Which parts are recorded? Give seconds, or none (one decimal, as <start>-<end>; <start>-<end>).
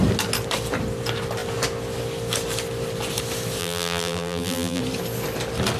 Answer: 0.0-3.6; 4.8-5.8